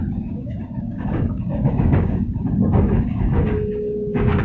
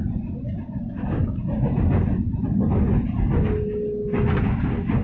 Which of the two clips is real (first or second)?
second